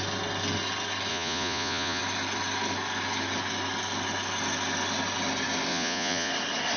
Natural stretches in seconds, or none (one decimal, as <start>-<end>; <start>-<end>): 0.0-1.1; 2.0-5.7; 6.3-6.8